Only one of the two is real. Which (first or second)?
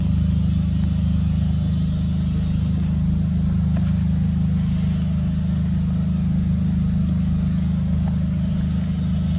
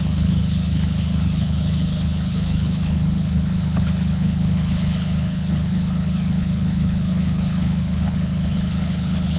first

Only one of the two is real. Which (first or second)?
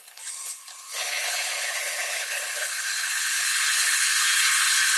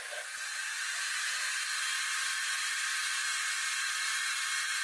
second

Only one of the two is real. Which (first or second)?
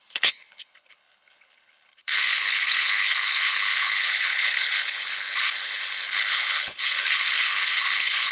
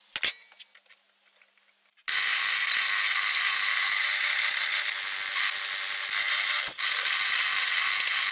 second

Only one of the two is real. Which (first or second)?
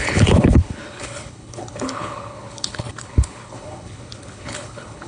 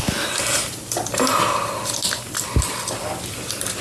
second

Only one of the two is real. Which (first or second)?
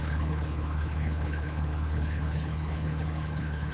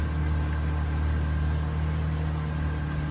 second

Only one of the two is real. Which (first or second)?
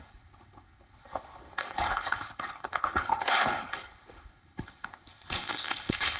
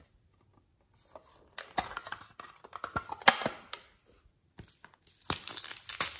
second